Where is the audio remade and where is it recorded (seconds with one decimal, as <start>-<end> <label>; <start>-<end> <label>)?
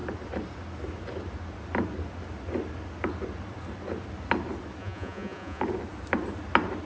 0.0-4.8 recorded; 4.8-5.6 remade; 5.6-6.9 recorded